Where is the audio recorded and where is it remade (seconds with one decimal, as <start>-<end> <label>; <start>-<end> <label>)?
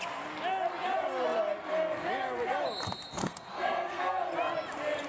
0.0-3.2 recorded; 3.2-4.2 remade; 4.2-5.1 recorded